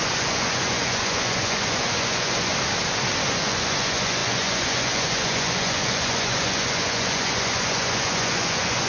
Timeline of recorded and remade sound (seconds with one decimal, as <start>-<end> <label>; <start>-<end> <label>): 0.0-2.5 remade; 2.5-3.3 recorded; 3.3-8.9 remade